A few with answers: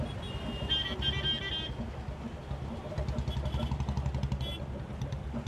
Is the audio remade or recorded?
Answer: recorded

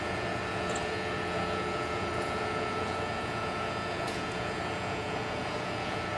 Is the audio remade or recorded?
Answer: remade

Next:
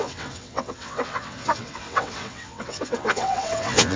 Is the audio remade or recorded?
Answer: remade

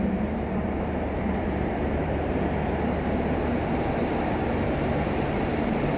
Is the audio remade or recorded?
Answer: remade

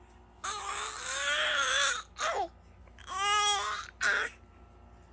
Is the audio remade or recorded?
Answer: recorded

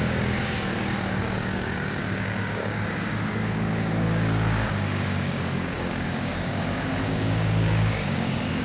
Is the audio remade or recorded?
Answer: remade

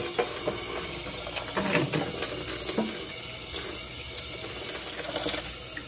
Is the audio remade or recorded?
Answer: recorded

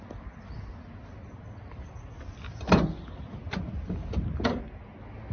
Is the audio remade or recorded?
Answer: recorded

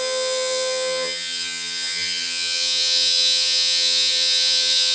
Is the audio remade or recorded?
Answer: remade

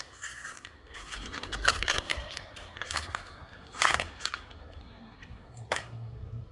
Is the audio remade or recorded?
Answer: remade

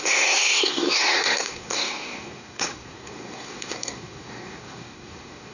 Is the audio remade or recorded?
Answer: remade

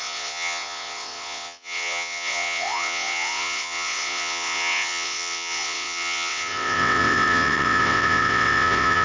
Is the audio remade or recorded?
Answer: remade